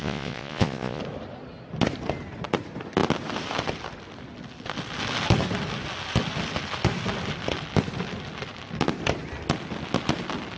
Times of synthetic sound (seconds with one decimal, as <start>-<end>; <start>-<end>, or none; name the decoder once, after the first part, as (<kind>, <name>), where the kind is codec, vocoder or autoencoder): 0.0-1.0 (vocoder, Vocos)

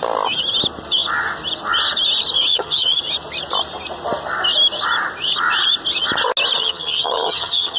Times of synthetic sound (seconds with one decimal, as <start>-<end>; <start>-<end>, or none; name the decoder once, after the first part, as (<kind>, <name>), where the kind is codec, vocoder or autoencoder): 2.5-3.0 (vocoder, HiFi-GAN); 6.6-7.8

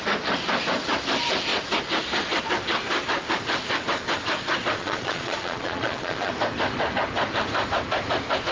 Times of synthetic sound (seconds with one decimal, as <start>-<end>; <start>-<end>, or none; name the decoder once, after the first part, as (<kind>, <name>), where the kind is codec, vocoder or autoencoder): 4.8-6.3 (vocoder, Vocos)

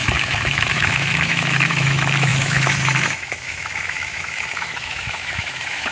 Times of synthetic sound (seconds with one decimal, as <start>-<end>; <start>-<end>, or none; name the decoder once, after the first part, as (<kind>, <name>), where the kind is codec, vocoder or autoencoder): 0.0-5.9 (autoencoder, DAC-VAE)

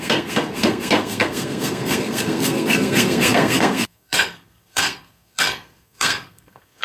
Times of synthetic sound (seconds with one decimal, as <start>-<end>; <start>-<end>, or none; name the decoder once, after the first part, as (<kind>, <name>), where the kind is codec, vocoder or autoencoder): 0.0-6.8 (codec, SNAC)